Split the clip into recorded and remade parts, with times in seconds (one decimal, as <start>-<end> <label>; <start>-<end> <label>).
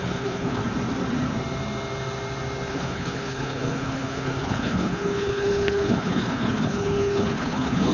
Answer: 0.0-0.6 remade; 0.6-2.7 recorded; 2.7-7.9 remade